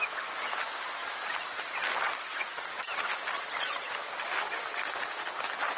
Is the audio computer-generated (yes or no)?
no